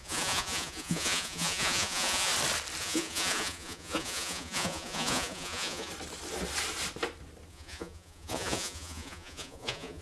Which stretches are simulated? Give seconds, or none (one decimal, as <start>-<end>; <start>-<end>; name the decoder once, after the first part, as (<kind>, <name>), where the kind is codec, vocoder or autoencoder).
0.0-2.3 (vocoder, Vocos); 2.8-5.9; 7.5-10.0